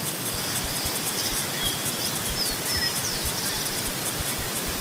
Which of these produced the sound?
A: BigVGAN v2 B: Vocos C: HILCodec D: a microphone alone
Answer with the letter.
D